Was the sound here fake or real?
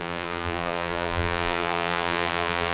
fake